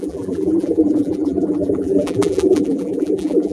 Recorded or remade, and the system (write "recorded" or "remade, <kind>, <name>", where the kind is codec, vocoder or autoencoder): remade, vocoder, BigVGAN v2